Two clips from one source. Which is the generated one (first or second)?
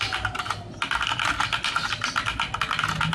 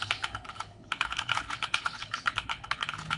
second